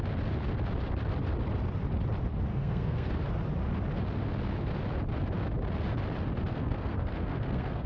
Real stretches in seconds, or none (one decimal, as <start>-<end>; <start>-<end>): 0.0-2.5; 3.1-6.5